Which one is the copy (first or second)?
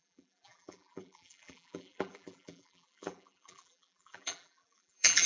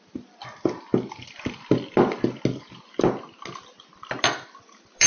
first